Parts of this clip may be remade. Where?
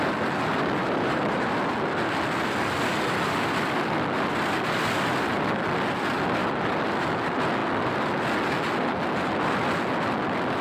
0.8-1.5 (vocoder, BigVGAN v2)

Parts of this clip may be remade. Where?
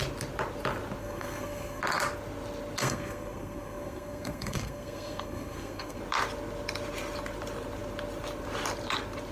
1.0-1.8 (codec, SNAC); 2.8-6.0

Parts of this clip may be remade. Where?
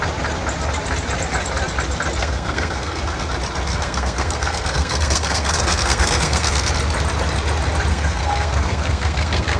2.2-3.0 (codec, SNAC); 3.7-6.7; 7.9-9.6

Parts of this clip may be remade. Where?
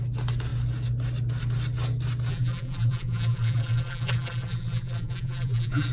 2.3-5.9 (vocoder, BigVGAN v2)